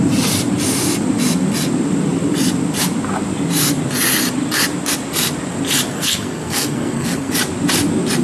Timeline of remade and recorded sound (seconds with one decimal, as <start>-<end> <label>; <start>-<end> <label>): 0.0-5.9 recorded; 5.9-7.3 remade; 7.3-8.2 recorded